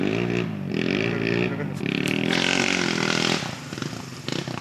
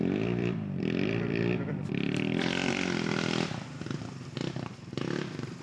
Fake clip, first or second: second